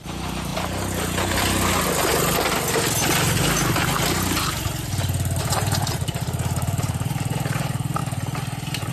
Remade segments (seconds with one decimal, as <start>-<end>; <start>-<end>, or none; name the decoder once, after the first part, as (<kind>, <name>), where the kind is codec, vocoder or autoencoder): 0.0-0.5 (vocoder, BigVGAN v2); 5.4-8.0